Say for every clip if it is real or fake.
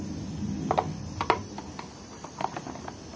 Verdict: real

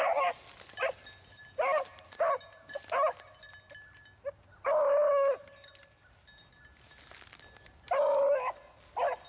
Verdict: real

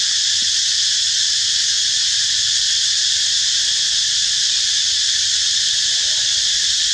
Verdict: real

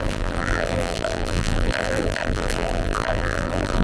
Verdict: fake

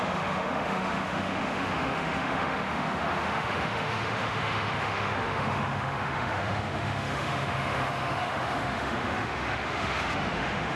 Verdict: fake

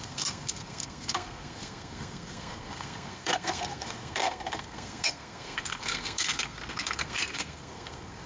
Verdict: fake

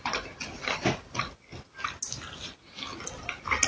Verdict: real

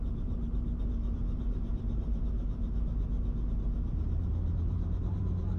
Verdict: fake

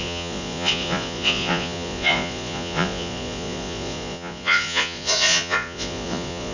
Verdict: fake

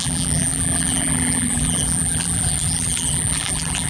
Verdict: fake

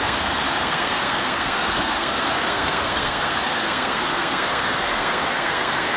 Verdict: fake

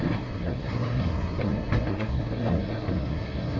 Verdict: fake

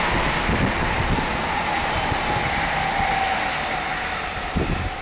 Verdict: real